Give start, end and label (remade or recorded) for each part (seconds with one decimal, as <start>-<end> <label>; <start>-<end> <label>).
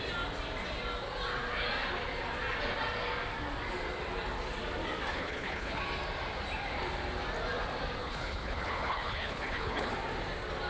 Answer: 0.0-5.1 recorded; 5.1-5.8 remade; 5.8-8.0 recorded; 8.0-9.9 remade; 9.9-10.7 recorded